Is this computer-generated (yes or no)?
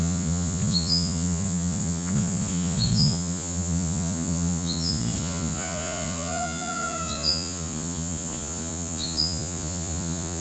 yes